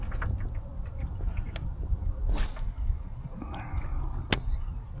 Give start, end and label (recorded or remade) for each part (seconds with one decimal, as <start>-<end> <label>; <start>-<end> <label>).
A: 0.0-5.0 recorded